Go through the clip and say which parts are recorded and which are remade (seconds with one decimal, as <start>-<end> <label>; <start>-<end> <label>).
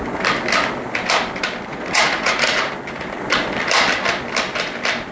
0.0-1.7 recorded; 1.7-2.7 remade; 2.7-5.1 recorded